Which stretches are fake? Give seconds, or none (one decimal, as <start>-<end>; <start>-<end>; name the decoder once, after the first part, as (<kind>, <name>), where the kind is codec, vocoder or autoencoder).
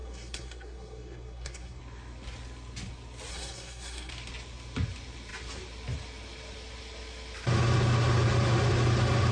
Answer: 0.0-1.8 (codec, SNAC); 3.3-4.1